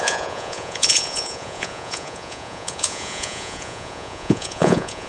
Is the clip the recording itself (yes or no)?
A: no